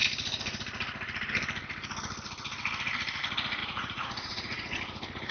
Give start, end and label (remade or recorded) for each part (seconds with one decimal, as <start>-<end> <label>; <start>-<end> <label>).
0.0-3.6 recorded; 3.6-4.8 remade; 4.8-5.3 recorded